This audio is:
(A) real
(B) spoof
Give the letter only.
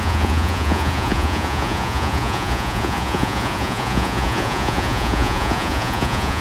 B